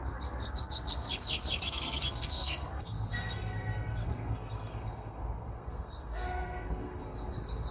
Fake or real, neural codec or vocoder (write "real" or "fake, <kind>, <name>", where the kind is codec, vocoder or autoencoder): fake, codec, SNAC